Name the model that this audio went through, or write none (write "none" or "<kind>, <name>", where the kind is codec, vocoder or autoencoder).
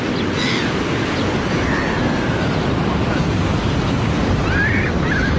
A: none